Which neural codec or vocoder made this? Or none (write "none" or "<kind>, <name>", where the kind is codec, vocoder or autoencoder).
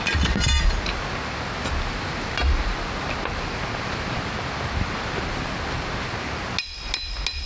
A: none